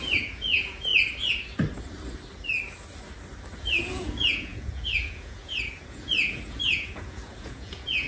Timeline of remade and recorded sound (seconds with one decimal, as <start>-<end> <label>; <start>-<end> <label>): 0.0-0.9 remade; 0.9-3.6 recorded; 3.6-8.1 remade